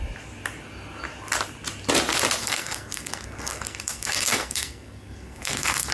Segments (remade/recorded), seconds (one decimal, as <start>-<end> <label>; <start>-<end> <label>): 0.0-2.4 recorded; 2.4-5.9 remade